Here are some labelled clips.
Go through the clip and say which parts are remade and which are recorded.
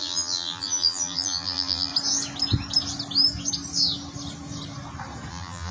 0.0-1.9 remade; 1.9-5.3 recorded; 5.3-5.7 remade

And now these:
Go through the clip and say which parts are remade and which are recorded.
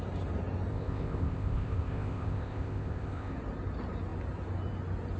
0.0-0.7 recorded; 0.7-3.3 remade; 3.3-5.2 recorded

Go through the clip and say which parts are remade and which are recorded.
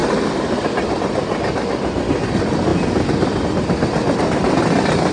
0.0-5.1 recorded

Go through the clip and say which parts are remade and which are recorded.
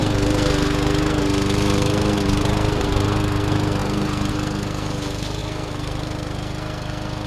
0.0-7.3 remade